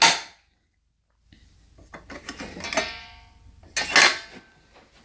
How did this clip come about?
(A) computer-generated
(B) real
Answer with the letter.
B